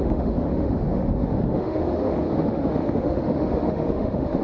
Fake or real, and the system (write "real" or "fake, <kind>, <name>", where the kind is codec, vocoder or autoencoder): fake, autoencoder, DAC-VAE